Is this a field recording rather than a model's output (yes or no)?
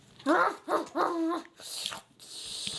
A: yes